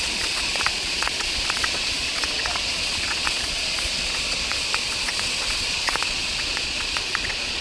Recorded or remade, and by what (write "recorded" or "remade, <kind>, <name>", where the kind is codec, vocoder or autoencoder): remade, vocoder, Vocos